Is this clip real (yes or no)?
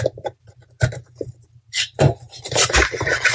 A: no